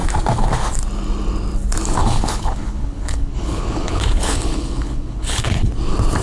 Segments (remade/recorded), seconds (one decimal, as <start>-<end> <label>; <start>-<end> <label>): 0.0-2.0 recorded; 2.0-5.7 remade; 5.7-6.2 recorded